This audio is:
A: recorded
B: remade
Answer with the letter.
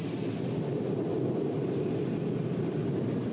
A